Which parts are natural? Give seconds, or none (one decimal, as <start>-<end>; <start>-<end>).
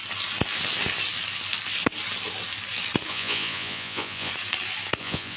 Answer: 0.0-3.1; 4.3-5.0